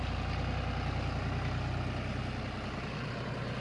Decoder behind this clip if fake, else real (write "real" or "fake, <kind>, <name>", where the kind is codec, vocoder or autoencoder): real